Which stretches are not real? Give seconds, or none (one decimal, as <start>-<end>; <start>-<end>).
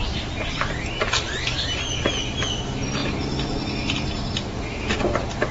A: none